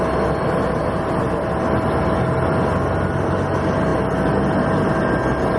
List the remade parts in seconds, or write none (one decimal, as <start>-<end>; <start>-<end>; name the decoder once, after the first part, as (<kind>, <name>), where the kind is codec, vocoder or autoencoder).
none